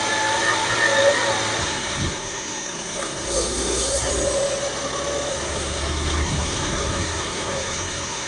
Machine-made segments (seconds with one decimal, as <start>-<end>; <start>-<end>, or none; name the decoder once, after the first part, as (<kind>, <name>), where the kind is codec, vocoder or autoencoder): 1.6-4.1 (codec, SNAC); 5.3-8.3